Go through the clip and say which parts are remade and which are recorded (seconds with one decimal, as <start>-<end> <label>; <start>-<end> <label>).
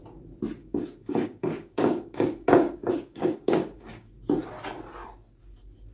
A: 0.0-0.6 recorded; 0.6-4.1 remade; 4.1-5.9 recorded